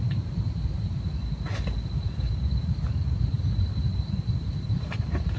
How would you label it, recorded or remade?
recorded